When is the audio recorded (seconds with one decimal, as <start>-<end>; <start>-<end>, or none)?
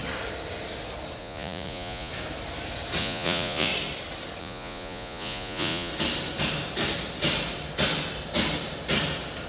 0.0-1.2; 2.1-3.0; 3.7-4.4; 5.9-9.5